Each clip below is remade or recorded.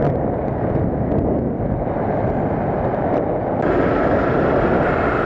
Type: recorded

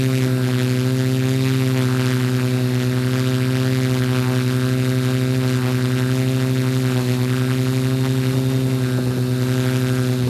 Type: recorded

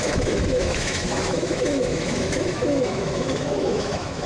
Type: remade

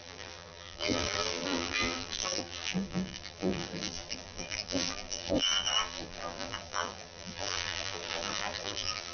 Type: remade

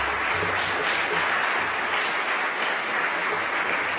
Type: recorded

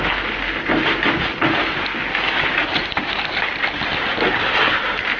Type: recorded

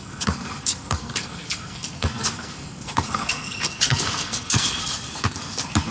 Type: remade